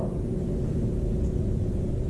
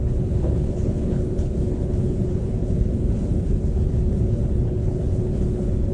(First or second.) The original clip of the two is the first